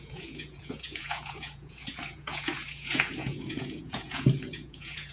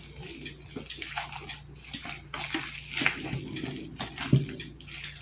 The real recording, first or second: second